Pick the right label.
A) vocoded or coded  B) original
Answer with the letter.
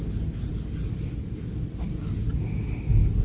B